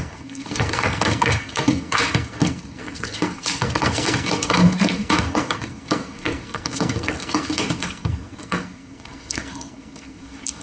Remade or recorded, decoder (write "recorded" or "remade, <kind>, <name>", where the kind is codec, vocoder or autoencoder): remade, codec, SNAC